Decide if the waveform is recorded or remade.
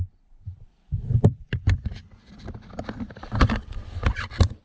remade